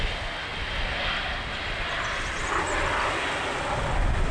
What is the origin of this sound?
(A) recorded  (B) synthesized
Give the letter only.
A